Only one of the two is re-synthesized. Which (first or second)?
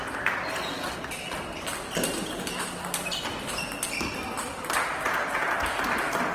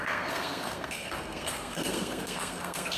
second